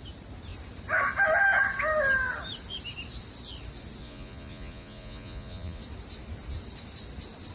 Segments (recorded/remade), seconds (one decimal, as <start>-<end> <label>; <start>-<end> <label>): 0.0-4.0 recorded; 4.0-5.8 remade; 5.8-7.5 recorded